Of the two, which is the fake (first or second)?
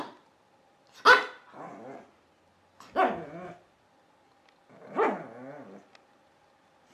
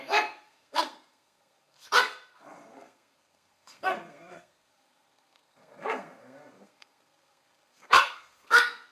second